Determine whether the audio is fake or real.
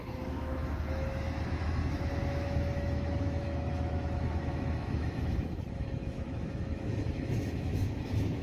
fake